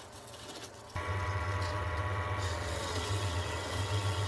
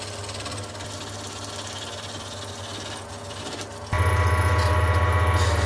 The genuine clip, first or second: second